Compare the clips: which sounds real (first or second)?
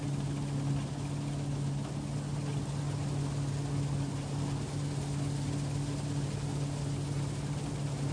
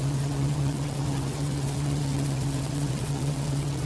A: first